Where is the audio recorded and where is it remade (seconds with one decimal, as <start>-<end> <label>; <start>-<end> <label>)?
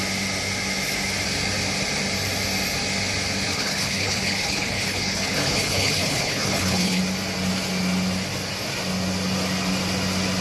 0.0-3.5 recorded; 3.5-7.0 remade; 7.0-10.4 recorded